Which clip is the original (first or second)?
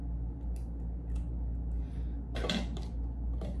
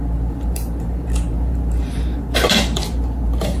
first